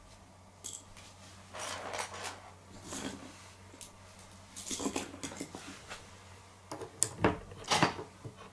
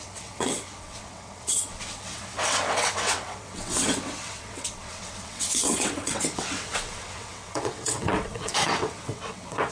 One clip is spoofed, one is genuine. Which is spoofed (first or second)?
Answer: second